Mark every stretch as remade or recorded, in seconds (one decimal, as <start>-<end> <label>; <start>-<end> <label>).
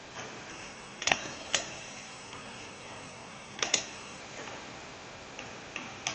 0.0-0.5 recorded; 0.5-4.2 remade; 4.2-6.1 recorded